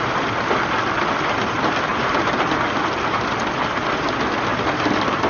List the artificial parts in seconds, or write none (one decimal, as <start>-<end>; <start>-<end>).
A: 1.9-3.2; 4.5-5.3

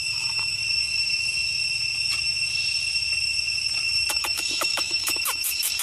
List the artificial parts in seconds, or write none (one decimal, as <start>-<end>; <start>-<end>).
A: 0.0-0.6; 4.1-5.8